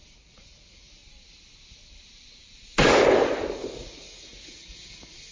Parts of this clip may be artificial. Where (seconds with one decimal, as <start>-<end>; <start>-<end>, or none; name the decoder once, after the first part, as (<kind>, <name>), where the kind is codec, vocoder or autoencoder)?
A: 0.0-1.0 (vocoder, Vocos); 3.5-5.3